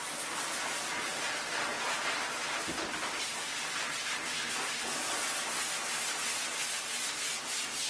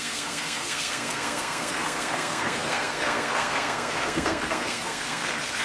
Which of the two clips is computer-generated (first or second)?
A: second